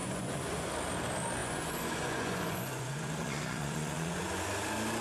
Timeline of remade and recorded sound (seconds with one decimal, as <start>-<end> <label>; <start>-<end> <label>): 0.0-0.7 remade; 0.7-1.4 recorded; 1.4-4.4 remade; 4.4-5.0 recorded